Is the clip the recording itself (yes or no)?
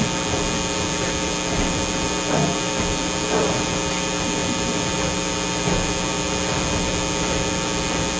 yes